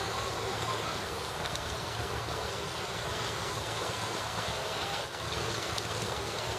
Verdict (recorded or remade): remade